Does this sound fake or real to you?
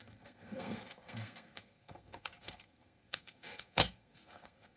fake